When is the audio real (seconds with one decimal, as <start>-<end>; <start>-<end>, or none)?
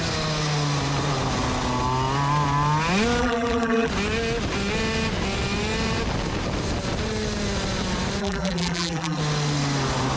0.0-3.2; 3.9-8.2; 9.2-10.2